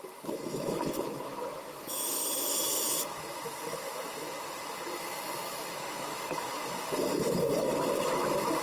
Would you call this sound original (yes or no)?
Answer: no